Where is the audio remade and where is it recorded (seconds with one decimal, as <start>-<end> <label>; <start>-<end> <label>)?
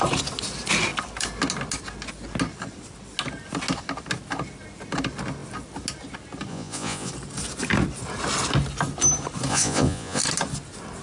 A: 0.0-6.5 recorded; 6.5-7.1 remade; 7.1-9.5 recorded; 9.5-10.2 remade; 10.2-11.0 recorded